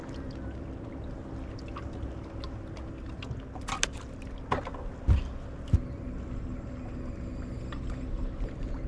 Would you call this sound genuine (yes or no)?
yes